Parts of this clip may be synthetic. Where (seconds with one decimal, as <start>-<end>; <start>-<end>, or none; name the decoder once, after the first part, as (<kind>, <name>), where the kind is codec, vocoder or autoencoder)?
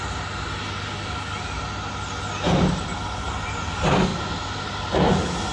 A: none